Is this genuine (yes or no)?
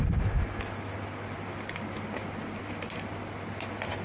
yes